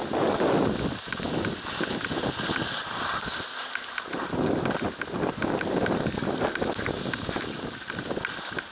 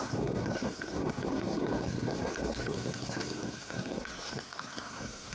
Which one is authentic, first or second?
first